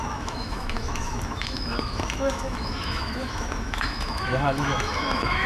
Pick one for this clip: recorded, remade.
remade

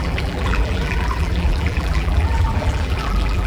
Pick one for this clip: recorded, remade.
remade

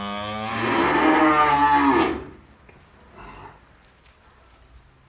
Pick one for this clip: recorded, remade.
recorded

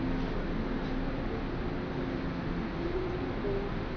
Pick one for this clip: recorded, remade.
recorded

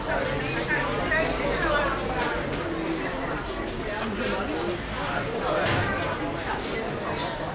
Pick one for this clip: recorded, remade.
recorded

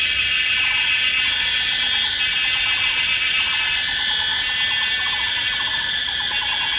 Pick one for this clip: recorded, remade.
recorded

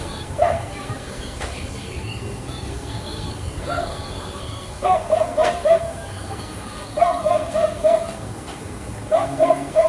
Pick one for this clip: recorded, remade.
remade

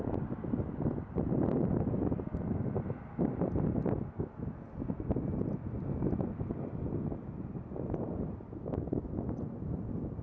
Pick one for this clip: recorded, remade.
recorded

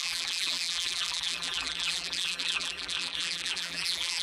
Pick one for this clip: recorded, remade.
remade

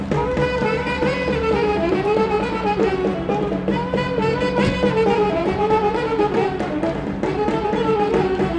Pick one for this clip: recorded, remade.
recorded